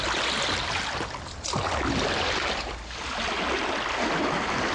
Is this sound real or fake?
real